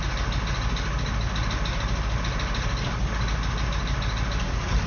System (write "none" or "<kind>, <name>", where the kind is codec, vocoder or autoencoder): none